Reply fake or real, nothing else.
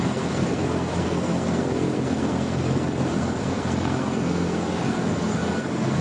fake